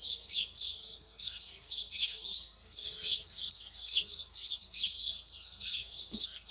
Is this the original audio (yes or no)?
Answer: no